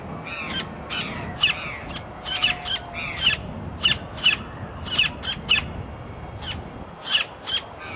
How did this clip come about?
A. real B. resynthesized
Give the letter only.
A